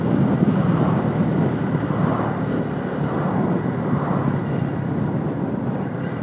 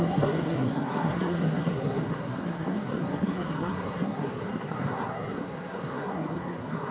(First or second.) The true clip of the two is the first